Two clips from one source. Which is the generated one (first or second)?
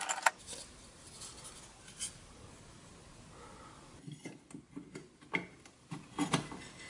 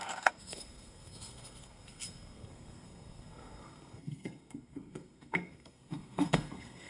second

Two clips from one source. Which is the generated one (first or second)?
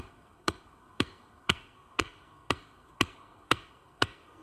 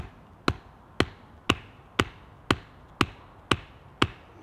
first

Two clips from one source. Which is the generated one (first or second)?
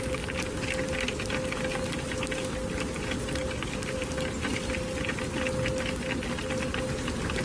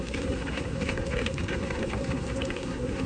second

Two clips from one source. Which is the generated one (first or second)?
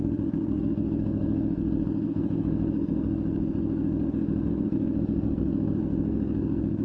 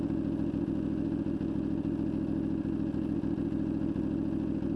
first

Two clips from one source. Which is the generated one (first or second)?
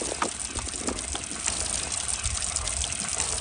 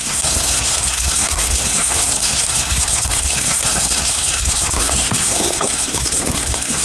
second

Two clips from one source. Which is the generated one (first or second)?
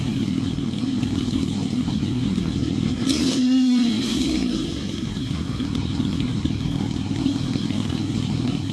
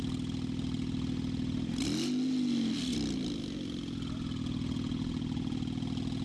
first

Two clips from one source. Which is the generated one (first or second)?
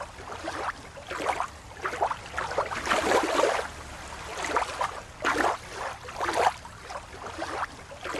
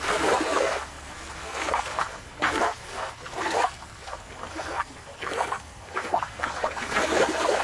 second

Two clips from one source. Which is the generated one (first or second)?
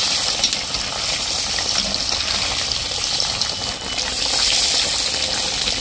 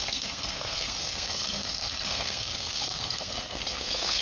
second